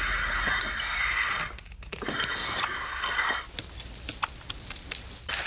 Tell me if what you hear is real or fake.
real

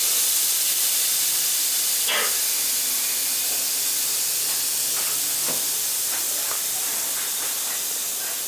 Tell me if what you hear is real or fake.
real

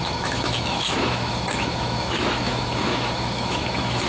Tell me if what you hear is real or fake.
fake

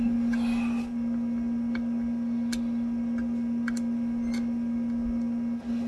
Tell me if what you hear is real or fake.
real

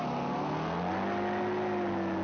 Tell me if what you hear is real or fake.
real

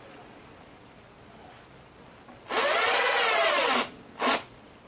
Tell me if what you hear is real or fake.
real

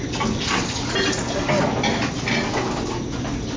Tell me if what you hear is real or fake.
real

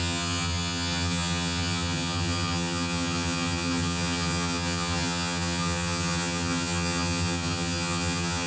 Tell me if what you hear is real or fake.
fake